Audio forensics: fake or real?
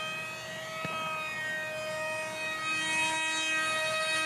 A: real